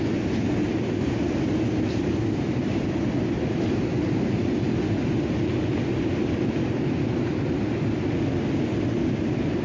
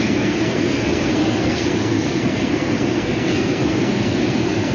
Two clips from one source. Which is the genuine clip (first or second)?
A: first